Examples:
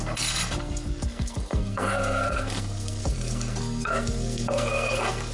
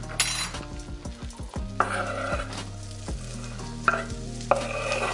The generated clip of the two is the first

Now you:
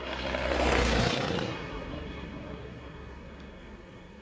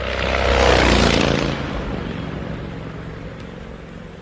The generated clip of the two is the first